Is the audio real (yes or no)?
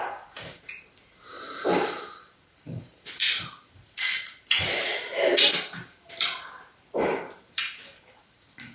no